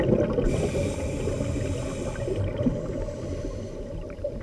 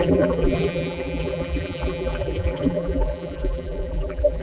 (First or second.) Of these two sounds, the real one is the first